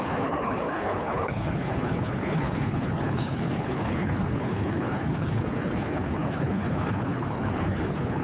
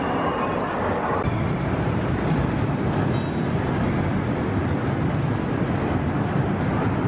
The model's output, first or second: first